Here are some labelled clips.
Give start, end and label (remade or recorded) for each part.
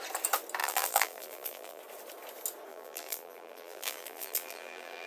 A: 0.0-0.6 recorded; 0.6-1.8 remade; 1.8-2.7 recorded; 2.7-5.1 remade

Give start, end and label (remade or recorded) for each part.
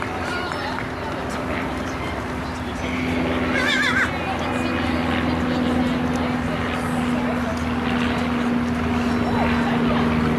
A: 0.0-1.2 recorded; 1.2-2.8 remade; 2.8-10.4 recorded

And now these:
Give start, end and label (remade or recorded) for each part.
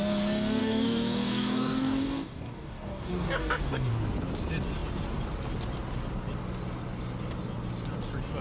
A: 0.0-0.6 recorded; 0.6-3.9 remade; 3.9-8.4 recorded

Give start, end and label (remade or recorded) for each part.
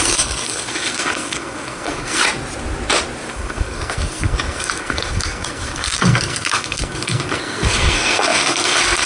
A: 0.0-2.2 remade; 2.2-3.3 recorded; 3.3-9.1 remade